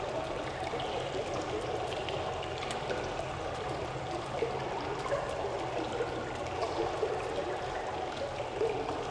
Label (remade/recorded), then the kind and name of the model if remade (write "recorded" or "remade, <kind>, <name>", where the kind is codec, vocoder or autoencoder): recorded